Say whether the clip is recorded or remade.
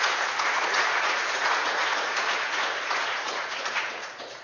remade